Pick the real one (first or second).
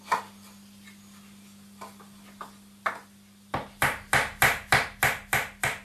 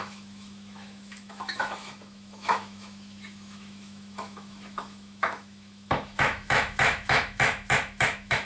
first